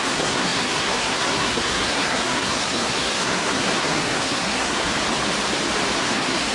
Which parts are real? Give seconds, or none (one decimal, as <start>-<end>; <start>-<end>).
4.9-6.0